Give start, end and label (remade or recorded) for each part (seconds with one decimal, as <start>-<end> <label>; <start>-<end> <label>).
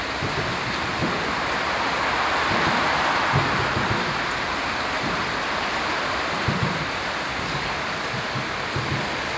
0.0-7.3 recorded; 7.3-8.0 remade; 8.0-9.4 recorded